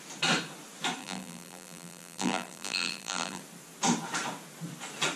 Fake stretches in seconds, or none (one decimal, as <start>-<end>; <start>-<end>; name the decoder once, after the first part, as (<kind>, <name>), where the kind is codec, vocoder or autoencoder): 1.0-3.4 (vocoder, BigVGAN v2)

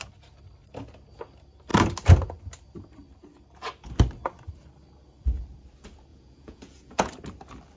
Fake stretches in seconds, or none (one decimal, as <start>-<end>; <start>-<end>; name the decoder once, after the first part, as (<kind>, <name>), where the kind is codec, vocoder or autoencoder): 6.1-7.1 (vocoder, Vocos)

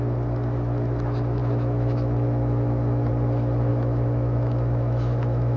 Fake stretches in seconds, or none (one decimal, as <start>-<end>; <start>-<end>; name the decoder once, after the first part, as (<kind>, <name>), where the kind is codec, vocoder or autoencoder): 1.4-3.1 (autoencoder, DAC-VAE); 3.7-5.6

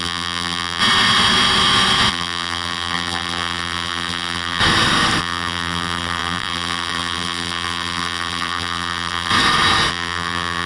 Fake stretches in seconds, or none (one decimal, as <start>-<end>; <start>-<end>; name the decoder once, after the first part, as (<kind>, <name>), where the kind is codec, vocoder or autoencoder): 0.0-0.8 (vocoder, BigVGAN v2); 2.1-4.6; 5.2-9.3; 9.9-10.7

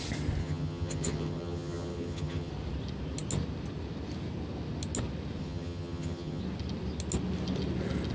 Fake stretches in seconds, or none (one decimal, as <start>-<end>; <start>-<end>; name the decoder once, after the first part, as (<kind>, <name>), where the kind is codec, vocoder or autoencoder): 0.4-2.5 (vocoder, HiFi-GAN); 5.4-6.4

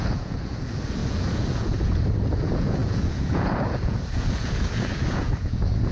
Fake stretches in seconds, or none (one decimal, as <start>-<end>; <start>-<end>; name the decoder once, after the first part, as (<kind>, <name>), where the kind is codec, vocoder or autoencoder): 0.0-5.9 (vocoder, Vocos)

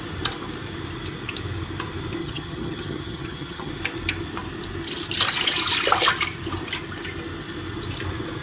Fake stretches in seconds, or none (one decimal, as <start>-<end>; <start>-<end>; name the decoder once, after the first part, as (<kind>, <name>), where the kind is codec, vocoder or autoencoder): 2.2-3.7 (vocoder, HiFi-GAN)